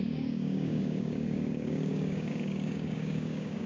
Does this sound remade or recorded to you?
remade